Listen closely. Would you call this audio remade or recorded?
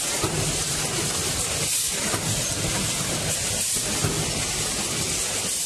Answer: recorded